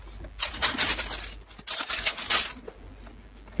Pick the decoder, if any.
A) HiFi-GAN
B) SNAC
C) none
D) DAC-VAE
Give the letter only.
C